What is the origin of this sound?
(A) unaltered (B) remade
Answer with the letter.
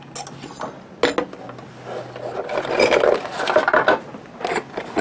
A